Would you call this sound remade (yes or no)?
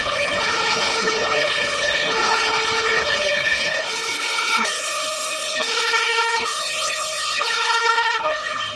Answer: yes